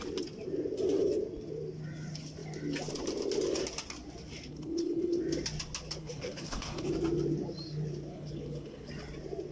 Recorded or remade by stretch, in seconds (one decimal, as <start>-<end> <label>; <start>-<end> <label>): 0.0-4.5 recorded; 4.5-5.2 remade; 5.2-6.0 recorded; 6.0-6.9 remade; 6.9-8.1 recorded; 8.1-8.9 remade; 8.9-9.5 recorded